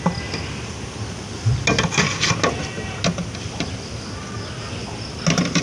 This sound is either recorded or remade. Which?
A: recorded